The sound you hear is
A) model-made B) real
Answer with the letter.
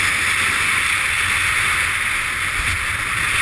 B